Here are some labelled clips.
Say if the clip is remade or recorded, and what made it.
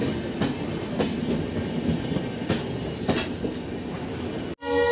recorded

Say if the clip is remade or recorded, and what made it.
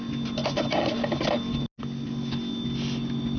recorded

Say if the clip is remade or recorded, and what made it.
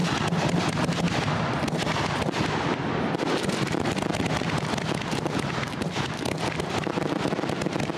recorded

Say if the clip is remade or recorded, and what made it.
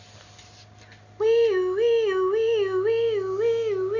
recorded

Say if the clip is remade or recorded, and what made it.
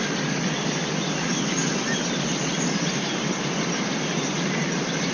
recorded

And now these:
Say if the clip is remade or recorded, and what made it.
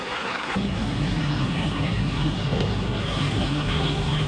remade, codec, SNAC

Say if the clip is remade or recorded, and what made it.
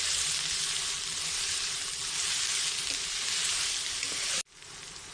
recorded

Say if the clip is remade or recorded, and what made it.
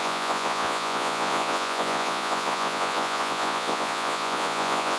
remade, vocoder, Vocos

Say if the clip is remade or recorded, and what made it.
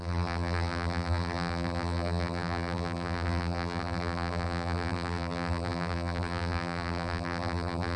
remade, vocoder, BigVGAN v2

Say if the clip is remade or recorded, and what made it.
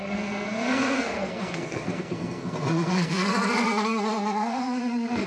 remade, codec, SNAC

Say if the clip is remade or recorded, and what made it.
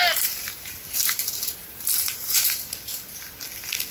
recorded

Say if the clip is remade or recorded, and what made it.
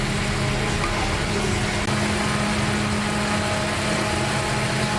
recorded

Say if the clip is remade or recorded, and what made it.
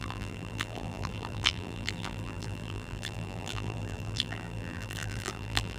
remade, vocoder, BigVGAN v2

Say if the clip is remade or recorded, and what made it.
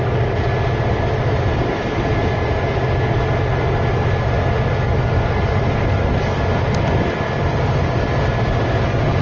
recorded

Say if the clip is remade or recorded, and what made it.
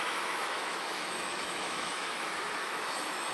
remade, autoencoder, DAC-VAE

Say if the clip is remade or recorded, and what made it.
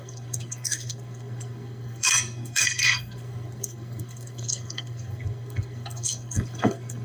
remade, codec, SNAC